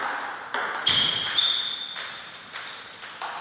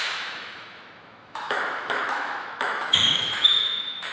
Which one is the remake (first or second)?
second